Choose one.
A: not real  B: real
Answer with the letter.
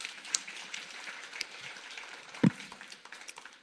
A